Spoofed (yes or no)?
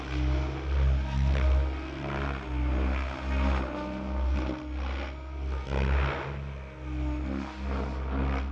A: no